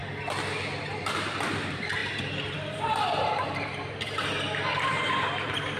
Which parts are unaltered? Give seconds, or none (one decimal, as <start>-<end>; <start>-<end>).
0.0-0.8

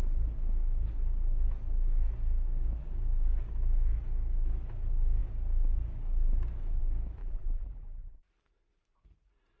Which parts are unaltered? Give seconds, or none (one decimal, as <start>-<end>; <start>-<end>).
0.0-7.2; 8.2-9.6

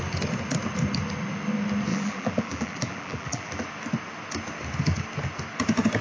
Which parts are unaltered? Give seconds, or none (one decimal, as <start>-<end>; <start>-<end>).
0.0-1.9; 3.5-6.0

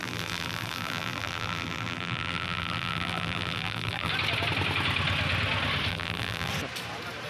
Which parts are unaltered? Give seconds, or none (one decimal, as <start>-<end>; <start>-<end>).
4.1-5.9; 6.5-7.3

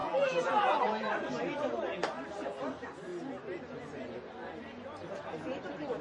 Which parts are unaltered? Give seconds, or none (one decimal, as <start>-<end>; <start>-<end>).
1.1-6.0

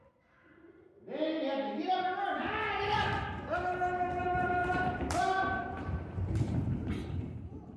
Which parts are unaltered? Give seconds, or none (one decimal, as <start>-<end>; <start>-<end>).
0.0-4.6

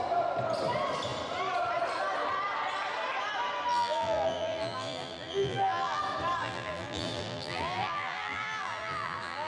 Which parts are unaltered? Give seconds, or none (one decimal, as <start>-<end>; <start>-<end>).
0.0-3.7; 6.0-6.4

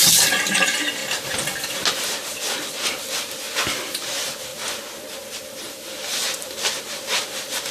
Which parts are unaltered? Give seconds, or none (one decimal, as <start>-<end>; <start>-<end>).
1.0-3.9; 4.5-5.3